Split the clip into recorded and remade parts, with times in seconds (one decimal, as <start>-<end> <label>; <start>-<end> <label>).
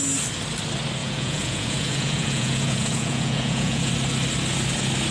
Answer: 0.0-1.0 recorded; 1.0-3.9 remade; 3.9-5.1 recorded